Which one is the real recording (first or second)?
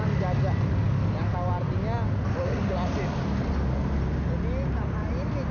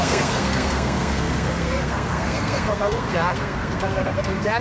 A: first